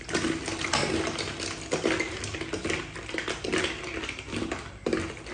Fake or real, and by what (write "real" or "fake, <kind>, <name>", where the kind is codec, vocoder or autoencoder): real